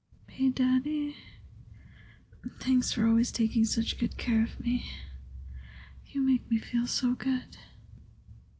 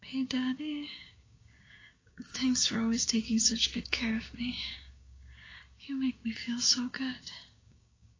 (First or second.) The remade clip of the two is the second